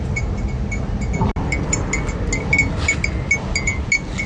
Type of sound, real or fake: real